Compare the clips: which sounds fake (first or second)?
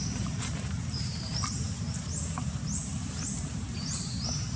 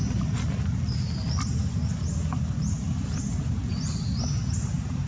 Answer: first